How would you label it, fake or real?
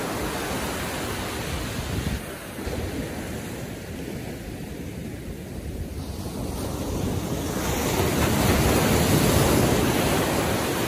real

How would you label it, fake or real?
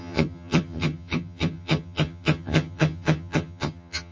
fake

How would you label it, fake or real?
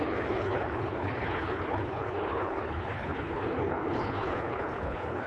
fake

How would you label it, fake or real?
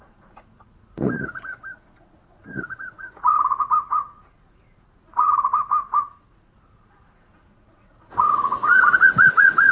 fake